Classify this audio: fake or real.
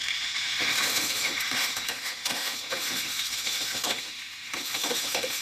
fake